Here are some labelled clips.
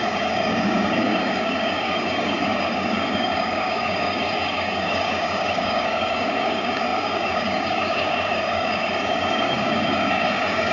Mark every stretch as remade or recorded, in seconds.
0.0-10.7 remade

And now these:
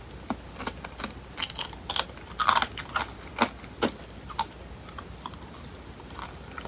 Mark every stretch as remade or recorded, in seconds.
0.0-6.7 recorded

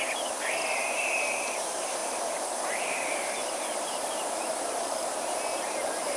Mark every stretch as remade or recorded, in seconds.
0.0-2.0 remade; 2.0-2.8 recorded; 2.8-6.2 remade

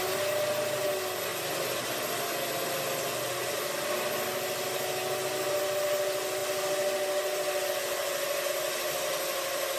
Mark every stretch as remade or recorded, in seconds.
0.0-9.8 recorded